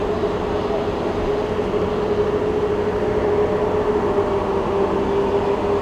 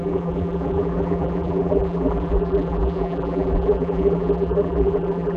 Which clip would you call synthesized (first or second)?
second